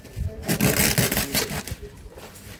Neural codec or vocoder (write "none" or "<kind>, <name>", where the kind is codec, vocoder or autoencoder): none